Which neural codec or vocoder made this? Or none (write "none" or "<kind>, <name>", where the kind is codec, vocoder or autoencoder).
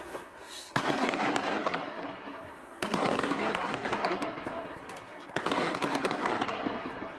codec, SNAC